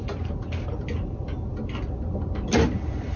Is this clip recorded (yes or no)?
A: yes